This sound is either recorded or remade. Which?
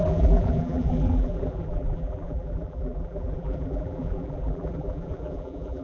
remade